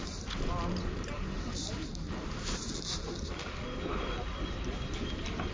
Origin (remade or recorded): recorded